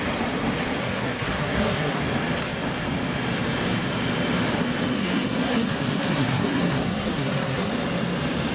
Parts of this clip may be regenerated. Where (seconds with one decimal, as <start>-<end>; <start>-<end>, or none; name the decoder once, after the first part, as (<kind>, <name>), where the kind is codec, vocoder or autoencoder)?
0.8-2.0 (codec, SNAC); 4.9-7.7